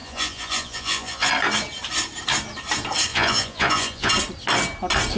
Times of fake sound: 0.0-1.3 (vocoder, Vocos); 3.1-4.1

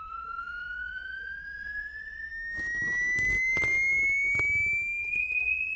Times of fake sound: 0.0-2.3 (vocoder, Vocos); 5.0-5.8